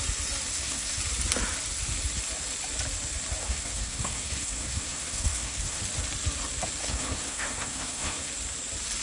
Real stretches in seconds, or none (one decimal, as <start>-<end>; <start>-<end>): 0.0-0.5; 1.0-3.4; 5.8-6.8; 8.3-9.0